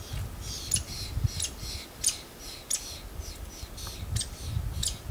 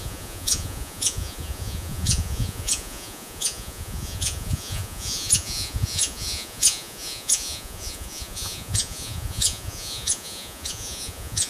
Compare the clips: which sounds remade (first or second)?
second